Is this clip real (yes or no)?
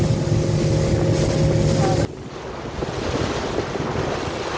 yes